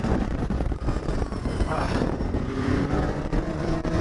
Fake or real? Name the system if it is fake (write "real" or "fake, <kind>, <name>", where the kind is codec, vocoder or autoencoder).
fake, vocoder, Vocos